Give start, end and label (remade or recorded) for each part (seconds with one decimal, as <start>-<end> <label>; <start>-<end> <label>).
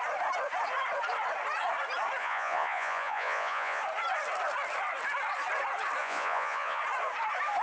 0.0-2.2 recorded; 2.2-3.8 remade; 3.8-6.0 recorded; 6.0-6.8 remade; 6.8-7.6 recorded